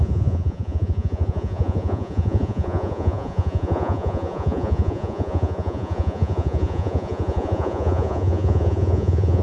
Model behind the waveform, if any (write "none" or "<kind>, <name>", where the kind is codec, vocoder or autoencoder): vocoder, Vocos